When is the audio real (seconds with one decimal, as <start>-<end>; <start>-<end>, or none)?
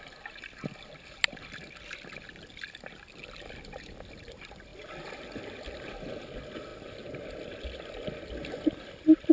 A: 0.0-9.3